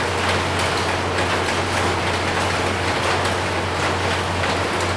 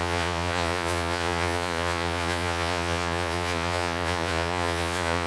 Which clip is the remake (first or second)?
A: second